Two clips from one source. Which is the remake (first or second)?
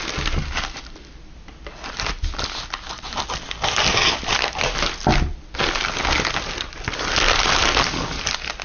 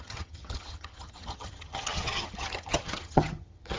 second